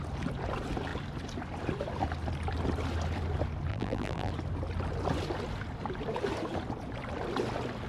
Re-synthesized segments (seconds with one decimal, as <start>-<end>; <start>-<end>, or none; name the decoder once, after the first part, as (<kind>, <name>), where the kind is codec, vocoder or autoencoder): 3.7-4.3 (vocoder, BigVGAN v2)